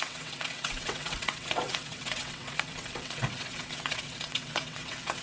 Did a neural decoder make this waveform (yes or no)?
yes